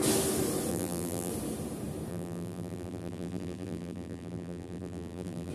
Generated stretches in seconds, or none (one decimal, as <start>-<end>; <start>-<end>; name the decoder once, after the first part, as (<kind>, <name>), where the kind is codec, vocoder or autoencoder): 0.7-1.3 (vocoder, BigVGAN v2); 2.1-5.5